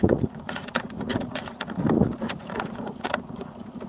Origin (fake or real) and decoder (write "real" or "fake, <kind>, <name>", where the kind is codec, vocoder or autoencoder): fake, vocoder, Vocos